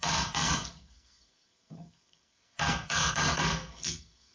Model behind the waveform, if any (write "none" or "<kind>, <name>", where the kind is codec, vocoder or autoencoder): codec, SNAC